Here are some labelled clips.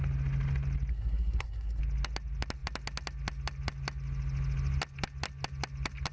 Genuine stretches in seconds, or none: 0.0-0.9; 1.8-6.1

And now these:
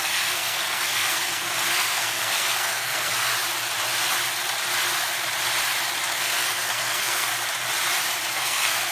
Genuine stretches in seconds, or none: 3.3-6.1; 7.3-8.3

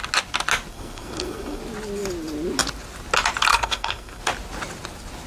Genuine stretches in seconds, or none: 0.0-0.7; 1.6-3.5; 4.2-5.3

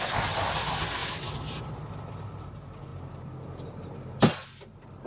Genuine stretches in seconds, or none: 0.0-5.1

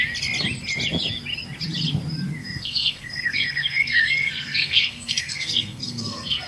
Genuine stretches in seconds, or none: 0.0-2.4

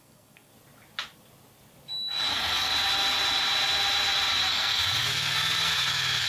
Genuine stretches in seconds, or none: 0.5-2.3; 2.7-4.5